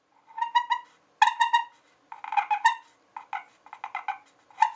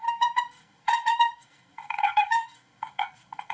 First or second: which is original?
first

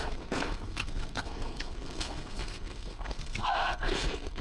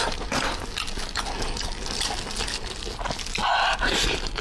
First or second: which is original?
second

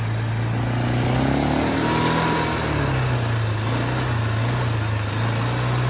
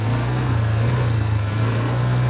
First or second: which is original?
first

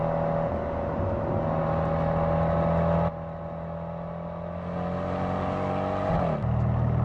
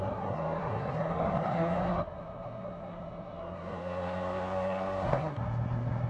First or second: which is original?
first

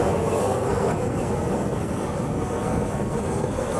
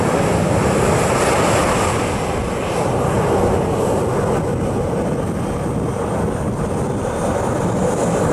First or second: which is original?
second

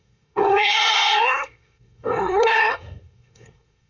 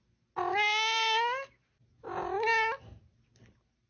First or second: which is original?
second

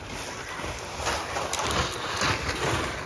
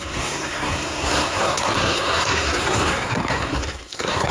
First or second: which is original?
first